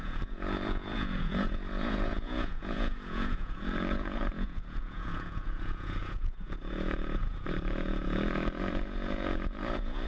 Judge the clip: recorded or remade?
remade